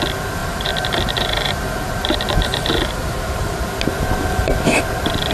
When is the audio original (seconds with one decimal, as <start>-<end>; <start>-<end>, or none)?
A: 0.0-0.4; 3.6-5.3